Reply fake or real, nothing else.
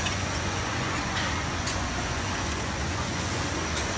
fake